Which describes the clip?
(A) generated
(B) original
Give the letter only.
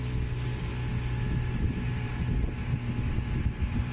B